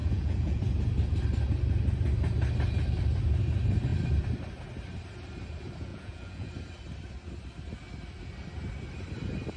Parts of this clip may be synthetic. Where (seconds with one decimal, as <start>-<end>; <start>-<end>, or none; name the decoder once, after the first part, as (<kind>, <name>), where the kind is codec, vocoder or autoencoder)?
0.0-0.6 (vocoder, Vocos); 5.9-6.5